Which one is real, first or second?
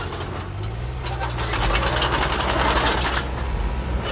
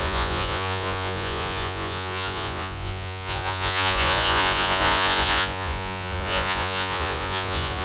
first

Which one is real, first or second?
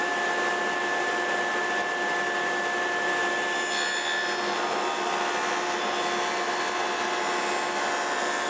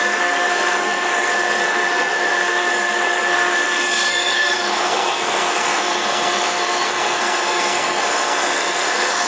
first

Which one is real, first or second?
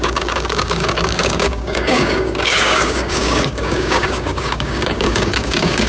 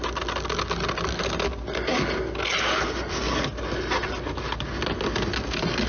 second